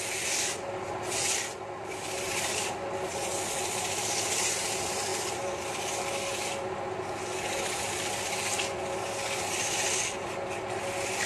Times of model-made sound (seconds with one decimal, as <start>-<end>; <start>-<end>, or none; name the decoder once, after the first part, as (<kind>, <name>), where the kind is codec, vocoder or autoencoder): none